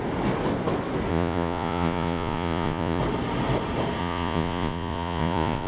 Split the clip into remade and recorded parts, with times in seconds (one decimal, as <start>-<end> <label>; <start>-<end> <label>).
0.0-1.1 recorded; 1.1-3.0 remade; 3.0-4.0 recorded; 4.0-5.7 remade